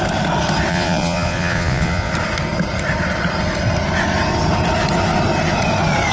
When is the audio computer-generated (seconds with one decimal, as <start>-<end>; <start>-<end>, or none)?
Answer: 0.7-2.1

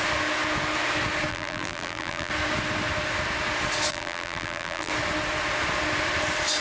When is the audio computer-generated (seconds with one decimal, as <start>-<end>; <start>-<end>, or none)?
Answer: 1.3-2.3; 3.9-4.9

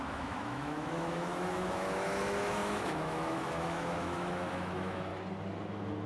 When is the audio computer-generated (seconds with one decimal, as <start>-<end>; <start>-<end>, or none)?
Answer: 0.0-5.1

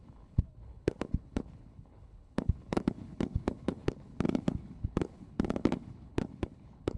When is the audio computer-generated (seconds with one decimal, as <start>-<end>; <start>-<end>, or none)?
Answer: 0.0-7.0